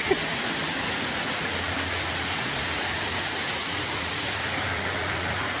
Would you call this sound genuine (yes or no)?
no